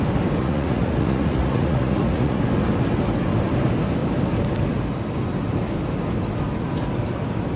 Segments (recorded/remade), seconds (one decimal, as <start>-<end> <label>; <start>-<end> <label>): 0.0-0.4 recorded; 0.4-2.4 remade; 2.4-7.6 recorded